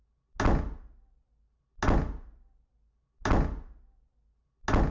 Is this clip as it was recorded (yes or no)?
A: yes